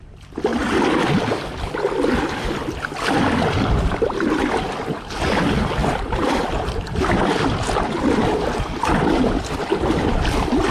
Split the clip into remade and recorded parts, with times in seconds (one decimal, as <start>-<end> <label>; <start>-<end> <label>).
0.0-5.8 recorded; 5.8-6.4 remade; 6.4-10.7 recorded